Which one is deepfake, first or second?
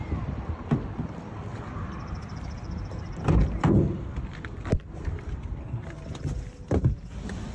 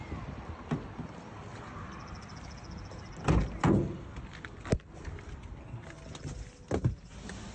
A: first